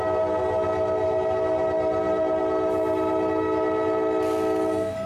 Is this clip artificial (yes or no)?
no